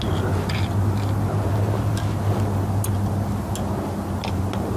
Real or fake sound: real